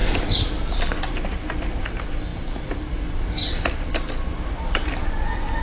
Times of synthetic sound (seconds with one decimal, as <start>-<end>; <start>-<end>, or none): 0.0-1.8; 2.3-3.3; 4.3-5.0